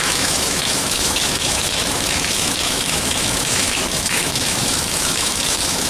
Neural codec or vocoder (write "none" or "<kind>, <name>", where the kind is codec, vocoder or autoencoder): autoencoder, DAC-VAE